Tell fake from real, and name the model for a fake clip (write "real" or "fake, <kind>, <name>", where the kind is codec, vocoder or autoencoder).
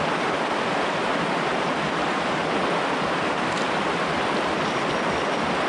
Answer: real